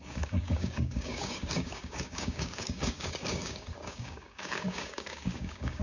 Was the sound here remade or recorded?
remade